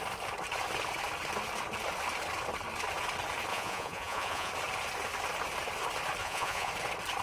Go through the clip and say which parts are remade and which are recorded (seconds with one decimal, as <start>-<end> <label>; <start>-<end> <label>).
0.0-3.5 recorded; 3.5-4.5 remade; 4.5-6.2 recorded; 6.2-6.7 remade; 6.7-7.2 recorded

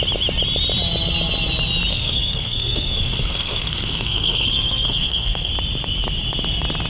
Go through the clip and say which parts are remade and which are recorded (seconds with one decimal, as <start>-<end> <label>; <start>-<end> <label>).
0.0-1.9 recorded; 1.9-5.5 remade; 5.5-6.9 recorded

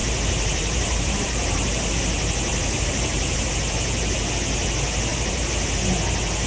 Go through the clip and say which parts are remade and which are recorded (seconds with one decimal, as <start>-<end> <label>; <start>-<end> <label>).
0.0-2.0 remade; 2.0-2.5 recorded; 2.5-3.4 remade; 3.4-5.1 recorded; 5.1-5.8 remade; 5.8-6.5 recorded

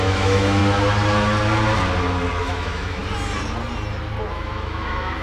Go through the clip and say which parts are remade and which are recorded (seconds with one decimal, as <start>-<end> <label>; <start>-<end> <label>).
0.0-0.6 remade; 0.6-2.4 recorded; 2.4-3.0 remade; 3.0-4.3 recorded; 4.3-5.2 remade

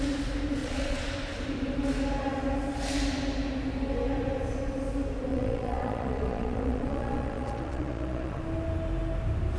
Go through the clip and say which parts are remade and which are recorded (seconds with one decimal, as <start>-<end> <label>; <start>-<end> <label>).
0.0-0.6 recorded; 0.6-1.1 remade; 1.1-5.3 recorded; 5.3-8.4 remade; 8.4-9.6 recorded

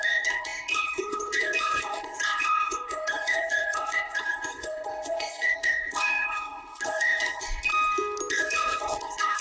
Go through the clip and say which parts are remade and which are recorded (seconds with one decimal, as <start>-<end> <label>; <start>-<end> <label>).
0.0-7.7 remade; 7.7-8.3 recorded; 8.3-9.4 remade

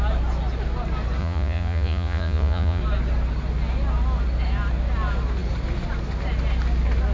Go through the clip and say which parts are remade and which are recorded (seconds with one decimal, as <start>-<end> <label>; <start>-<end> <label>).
0.0-1.2 recorded; 1.2-2.8 remade; 2.8-7.1 recorded